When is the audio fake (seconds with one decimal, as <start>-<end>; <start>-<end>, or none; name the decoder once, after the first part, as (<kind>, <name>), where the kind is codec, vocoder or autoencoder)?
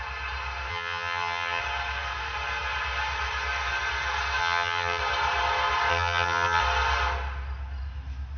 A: 0.7-1.6 (vocoder, HiFi-GAN); 4.4-5.0; 5.9-6.6